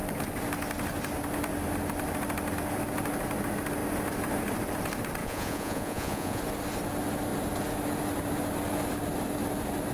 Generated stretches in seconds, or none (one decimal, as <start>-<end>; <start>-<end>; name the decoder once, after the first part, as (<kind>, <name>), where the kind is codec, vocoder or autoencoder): 5.2-6.4 (vocoder, Vocos)